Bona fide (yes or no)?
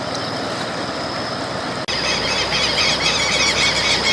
yes